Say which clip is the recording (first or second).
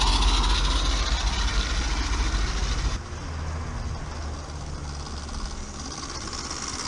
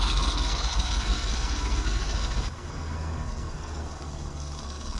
first